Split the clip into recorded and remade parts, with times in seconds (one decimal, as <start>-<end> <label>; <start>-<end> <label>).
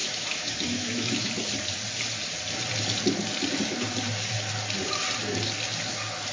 0.0-1.3 remade; 1.3-6.3 recorded